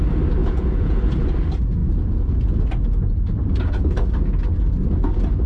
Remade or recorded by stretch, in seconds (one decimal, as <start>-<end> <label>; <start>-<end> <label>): 0.0-0.4 recorded; 0.4-1.0 remade; 1.0-5.5 recorded